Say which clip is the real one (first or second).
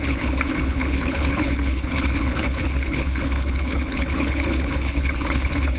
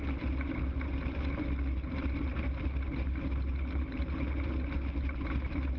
second